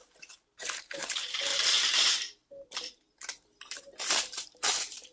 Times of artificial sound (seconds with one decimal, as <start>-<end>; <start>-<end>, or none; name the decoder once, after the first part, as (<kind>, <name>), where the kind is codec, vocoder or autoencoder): 0.0-5.1 (vocoder, BigVGAN v2)